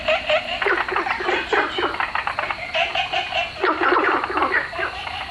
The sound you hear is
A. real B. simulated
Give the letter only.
A